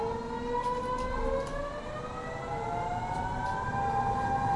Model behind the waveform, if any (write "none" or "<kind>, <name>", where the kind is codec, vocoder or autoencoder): none